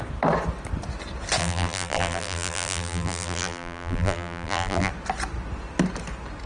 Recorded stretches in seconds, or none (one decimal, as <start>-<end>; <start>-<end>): 0.0-1.4; 4.9-6.5